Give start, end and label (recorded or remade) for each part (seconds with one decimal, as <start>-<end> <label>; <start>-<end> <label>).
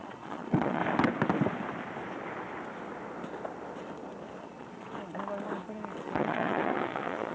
0.0-0.8 remade; 0.8-4.4 recorded; 4.4-4.9 remade; 4.9-6.0 recorded; 6.0-7.3 remade